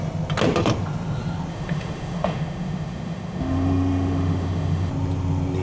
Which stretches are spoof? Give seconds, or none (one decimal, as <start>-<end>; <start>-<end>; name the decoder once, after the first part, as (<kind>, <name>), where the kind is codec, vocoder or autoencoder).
1.5-4.9 (autoencoder, DAC-VAE)